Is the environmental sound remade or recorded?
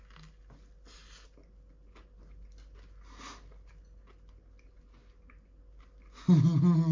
recorded